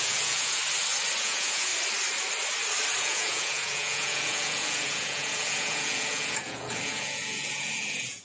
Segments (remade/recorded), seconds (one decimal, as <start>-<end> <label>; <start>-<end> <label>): 0.0-0.6 remade; 0.6-1.2 recorded; 1.2-1.7 remade; 1.7-3.0 recorded; 3.0-8.2 remade